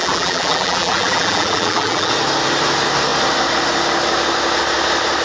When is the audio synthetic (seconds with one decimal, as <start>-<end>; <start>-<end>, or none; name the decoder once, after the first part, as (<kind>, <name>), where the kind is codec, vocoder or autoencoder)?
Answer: 0.0-2.1 (vocoder, BigVGAN v2)